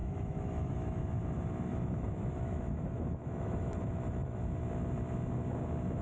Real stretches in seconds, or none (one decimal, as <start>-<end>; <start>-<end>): 1.0-1.7; 4.4-6.0